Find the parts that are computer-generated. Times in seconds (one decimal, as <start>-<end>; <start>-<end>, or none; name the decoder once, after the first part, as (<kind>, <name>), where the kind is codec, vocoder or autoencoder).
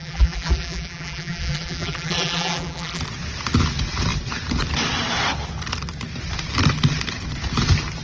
0.0-3.0 (vocoder, BigVGAN v2)